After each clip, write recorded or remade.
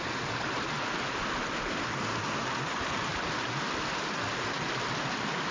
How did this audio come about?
recorded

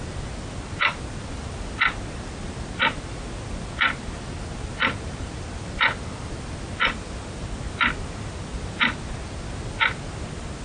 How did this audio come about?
recorded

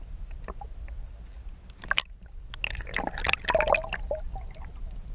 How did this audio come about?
recorded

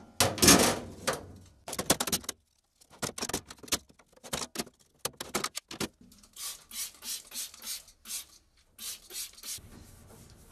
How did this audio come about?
recorded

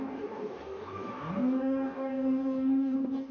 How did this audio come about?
remade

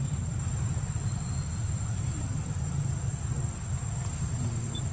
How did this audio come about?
recorded